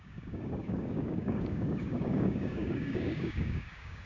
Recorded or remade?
remade